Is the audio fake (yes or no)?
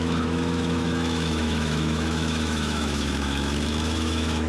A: yes